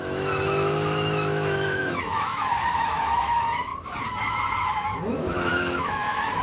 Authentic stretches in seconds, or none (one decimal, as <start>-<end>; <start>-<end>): 3.7-4.3; 4.8-5.5